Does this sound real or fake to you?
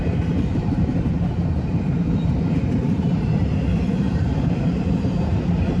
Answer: fake